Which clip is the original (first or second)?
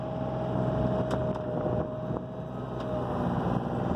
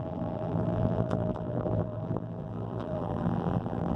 first